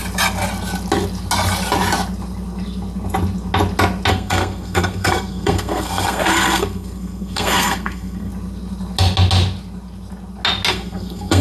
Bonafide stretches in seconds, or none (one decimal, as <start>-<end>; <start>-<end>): 0.0-4.1; 8.3-10.7